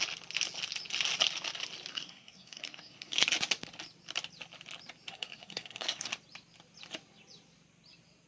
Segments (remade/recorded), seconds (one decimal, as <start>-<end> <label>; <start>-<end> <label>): 0.0-1.9 recorded; 1.9-3.2 remade; 3.2-5.1 recorded; 5.1-6.1 remade; 6.1-8.3 recorded